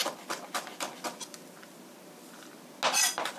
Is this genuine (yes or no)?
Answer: yes